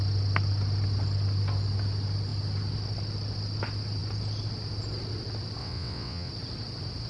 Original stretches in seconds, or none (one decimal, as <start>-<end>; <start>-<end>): 0.0-5.6; 6.3-7.1